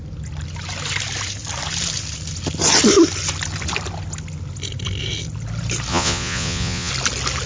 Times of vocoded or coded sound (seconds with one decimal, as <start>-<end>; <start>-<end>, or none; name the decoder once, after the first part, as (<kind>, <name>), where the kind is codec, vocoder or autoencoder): 5.9-6.9 (vocoder, Vocos)